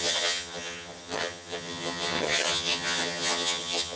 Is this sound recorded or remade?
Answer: remade